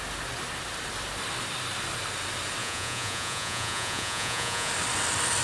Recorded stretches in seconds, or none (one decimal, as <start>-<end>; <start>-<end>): 0.0-2.6; 4.7-5.4